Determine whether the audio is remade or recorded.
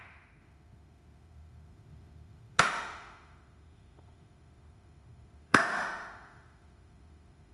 remade